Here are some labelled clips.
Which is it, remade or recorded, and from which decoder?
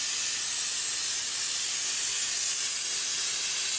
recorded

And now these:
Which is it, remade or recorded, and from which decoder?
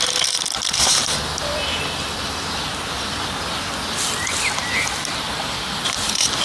recorded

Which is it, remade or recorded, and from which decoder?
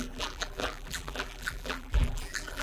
remade, vocoder, BigVGAN v2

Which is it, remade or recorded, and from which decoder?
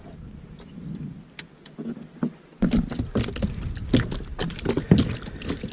recorded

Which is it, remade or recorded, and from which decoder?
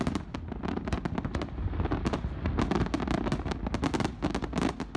recorded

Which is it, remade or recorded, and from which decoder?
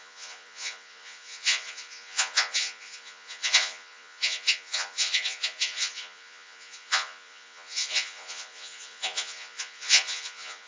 remade, vocoder, Vocos